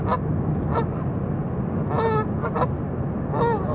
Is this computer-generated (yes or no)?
no